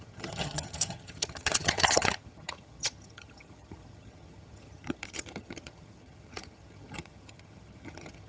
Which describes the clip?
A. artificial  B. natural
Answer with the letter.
A